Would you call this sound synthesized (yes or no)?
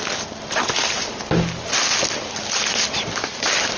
no